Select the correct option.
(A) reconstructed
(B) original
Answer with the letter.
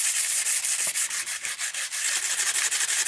B